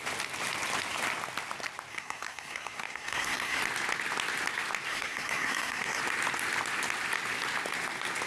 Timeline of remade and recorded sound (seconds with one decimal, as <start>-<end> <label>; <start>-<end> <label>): 0.0-1.9 recorded; 1.9-3.6 remade; 3.6-4.9 recorded; 4.9-6.0 remade; 6.0-8.3 recorded